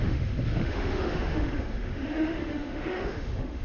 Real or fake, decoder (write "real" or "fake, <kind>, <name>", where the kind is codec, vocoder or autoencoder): fake, autoencoder, DAC-VAE